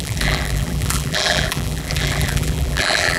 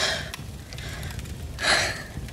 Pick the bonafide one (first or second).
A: second